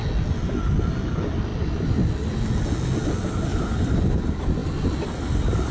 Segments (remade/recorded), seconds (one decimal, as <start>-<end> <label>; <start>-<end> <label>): 0.0-1.5 recorded; 1.5-2.4 remade; 2.4-3.5 recorded; 3.5-4.0 remade; 4.0-4.6 recorded; 4.6-5.7 remade